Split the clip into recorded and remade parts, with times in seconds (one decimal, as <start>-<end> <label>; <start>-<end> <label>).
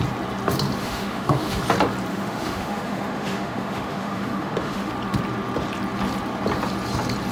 0.0-0.8 recorded; 0.8-1.6 remade; 1.6-2.1 recorded; 2.1-4.9 remade; 4.9-7.3 recorded